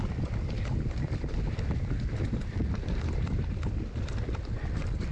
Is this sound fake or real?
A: real